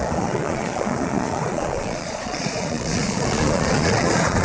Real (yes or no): no